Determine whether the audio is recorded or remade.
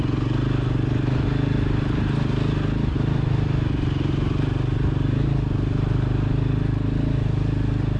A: recorded